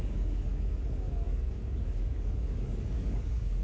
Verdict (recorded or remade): remade